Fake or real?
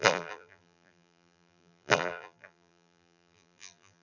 fake